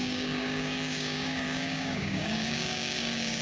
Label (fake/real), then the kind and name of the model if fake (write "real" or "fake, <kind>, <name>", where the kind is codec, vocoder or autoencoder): fake, codec, DAC